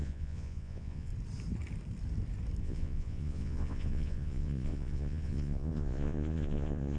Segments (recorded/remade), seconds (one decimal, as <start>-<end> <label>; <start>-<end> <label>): 0.0-1.1 remade; 1.1-2.6 recorded; 2.6-7.0 remade